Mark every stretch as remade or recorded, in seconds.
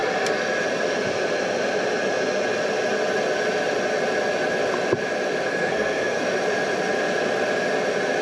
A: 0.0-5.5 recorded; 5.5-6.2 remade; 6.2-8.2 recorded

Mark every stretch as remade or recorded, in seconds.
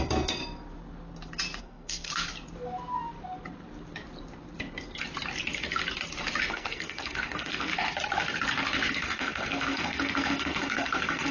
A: 0.0-0.4 remade; 0.4-1.6 recorded; 1.6-2.1 remade; 2.1-6.5 recorded; 6.5-7.7 remade; 7.7-8.9 recorded; 8.9-11.3 remade